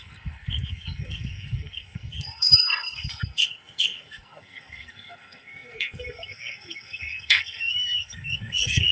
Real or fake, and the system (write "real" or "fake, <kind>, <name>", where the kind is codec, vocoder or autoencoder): fake, codec, SNAC